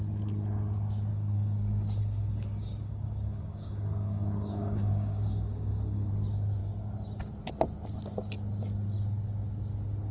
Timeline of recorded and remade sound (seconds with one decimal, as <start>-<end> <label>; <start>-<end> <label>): 0.0-1.1 recorded; 1.1-6.1 remade; 6.1-10.1 recorded